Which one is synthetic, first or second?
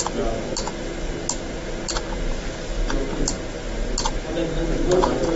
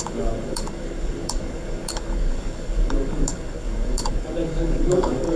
second